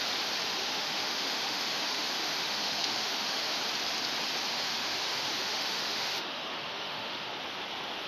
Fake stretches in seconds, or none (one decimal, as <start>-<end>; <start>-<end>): 0.6-3.6; 4.5-7.3